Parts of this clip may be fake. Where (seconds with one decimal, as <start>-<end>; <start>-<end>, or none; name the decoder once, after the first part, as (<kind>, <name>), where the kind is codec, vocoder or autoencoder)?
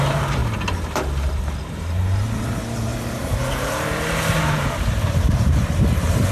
0.0-0.4 (vocoder, BigVGAN v2); 1.6-6.3